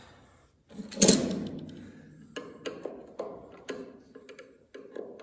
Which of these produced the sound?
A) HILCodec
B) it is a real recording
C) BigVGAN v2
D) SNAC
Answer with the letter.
B